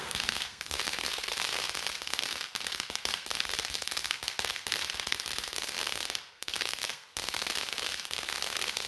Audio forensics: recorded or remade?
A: remade